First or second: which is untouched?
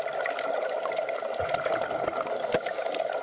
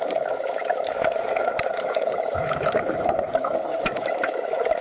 first